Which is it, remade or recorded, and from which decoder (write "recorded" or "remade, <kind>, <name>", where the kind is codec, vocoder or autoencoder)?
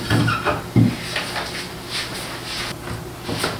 recorded